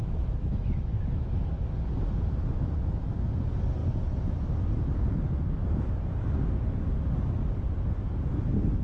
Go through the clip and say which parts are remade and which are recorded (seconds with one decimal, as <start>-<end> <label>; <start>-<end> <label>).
0.0-1.3 remade; 1.3-8.8 recorded